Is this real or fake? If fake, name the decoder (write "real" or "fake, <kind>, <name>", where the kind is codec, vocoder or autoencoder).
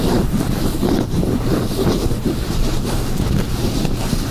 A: fake, vocoder, BigVGAN v2